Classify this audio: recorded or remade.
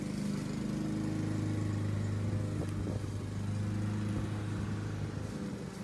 recorded